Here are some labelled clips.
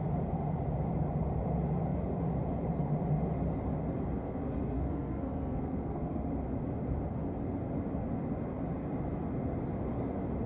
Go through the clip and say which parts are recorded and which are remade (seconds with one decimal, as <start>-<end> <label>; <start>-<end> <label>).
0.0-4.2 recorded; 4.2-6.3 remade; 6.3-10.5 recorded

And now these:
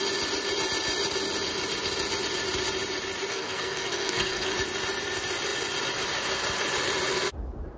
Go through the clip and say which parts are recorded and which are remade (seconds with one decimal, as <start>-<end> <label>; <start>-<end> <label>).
0.0-3.3 recorded; 3.3-4.5 remade; 4.5-7.8 recorded

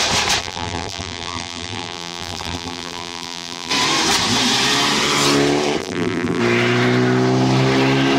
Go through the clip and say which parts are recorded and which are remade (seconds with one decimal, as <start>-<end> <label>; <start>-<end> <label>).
0.0-0.4 recorded; 0.4-3.7 remade; 3.7-5.8 recorded; 5.8-6.4 remade; 6.4-8.2 recorded

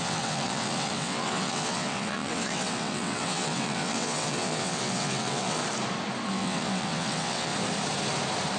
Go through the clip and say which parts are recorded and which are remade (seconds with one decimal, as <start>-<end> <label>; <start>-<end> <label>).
0.0-5.6 remade; 5.6-6.3 recorded; 6.3-7.5 remade; 7.5-8.6 recorded

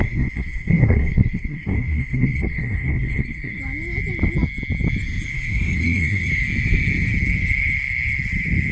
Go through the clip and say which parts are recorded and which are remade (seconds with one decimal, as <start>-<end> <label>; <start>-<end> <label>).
0.0-3.6 remade; 3.6-5.3 recorded; 5.3-6.3 remade; 6.3-8.7 recorded

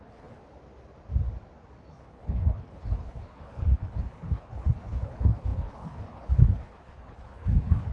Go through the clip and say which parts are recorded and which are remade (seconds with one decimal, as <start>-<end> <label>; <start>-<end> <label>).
0.0-0.4 remade; 0.4-1.9 recorded; 1.9-7.9 remade